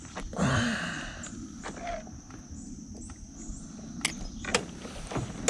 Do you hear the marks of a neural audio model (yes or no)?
no